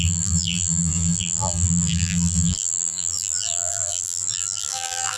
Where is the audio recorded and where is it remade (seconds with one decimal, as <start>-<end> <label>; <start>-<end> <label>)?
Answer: 0.0-5.2 remade